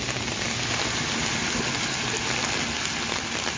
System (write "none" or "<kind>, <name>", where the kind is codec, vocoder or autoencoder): none